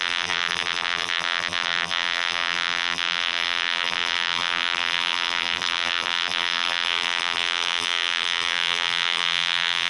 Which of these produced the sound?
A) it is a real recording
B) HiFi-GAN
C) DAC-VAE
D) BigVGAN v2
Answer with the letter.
D